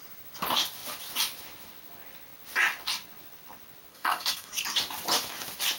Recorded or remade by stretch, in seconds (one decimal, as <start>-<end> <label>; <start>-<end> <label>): 0.0-3.9 recorded; 3.9-4.5 remade; 4.5-5.8 recorded